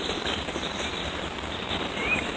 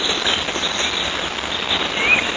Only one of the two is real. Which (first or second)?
second